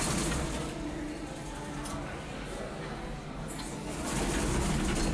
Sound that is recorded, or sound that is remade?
recorded